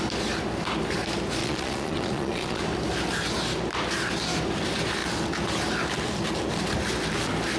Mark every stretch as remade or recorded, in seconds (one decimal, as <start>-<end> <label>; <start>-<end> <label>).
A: 0.0-1.4 recorded; 1.4-2.6 remade; 2.6-7.6 recorded